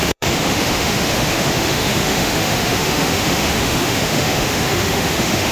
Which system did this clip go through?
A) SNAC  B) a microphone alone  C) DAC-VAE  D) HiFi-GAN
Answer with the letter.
C